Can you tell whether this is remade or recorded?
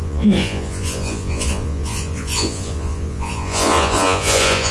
remade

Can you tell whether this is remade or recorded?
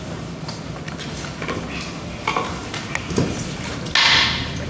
recorded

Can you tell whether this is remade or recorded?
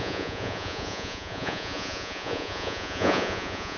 remade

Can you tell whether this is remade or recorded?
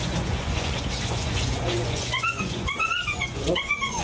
remade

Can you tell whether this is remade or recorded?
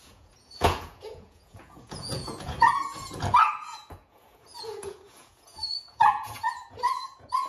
remade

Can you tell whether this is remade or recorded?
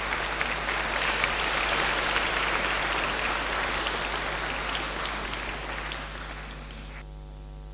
recorded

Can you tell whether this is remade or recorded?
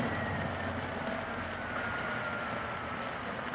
recorded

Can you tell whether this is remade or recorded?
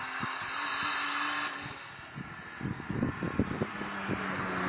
recorded